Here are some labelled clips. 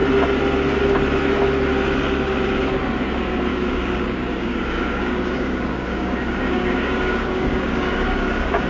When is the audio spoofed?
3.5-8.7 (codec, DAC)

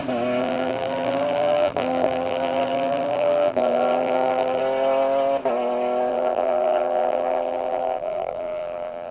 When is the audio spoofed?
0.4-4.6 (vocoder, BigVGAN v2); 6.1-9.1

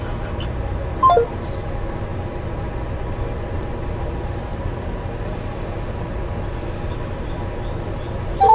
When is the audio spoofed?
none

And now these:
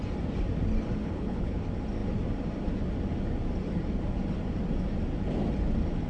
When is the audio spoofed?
1.0-1.6 (codec, HILCodec)